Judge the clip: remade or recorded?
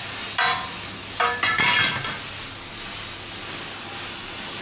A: recorded